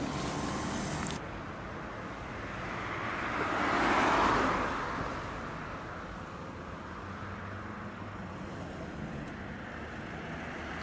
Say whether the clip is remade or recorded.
recorded